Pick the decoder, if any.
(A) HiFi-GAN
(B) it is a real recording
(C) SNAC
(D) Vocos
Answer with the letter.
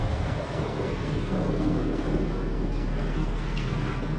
C